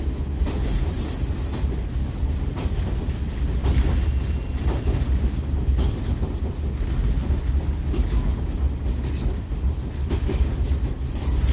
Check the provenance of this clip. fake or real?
real